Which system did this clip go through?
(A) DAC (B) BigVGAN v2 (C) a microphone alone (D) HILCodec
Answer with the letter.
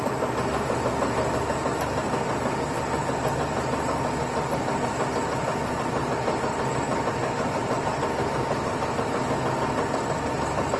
C